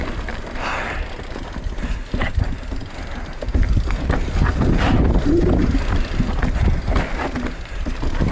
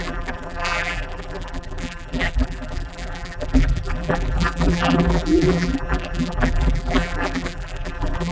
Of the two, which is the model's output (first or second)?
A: second